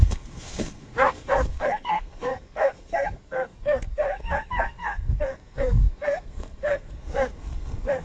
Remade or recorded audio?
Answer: remade